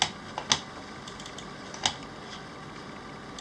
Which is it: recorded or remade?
recorded